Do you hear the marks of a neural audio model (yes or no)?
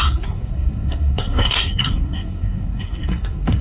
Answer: yes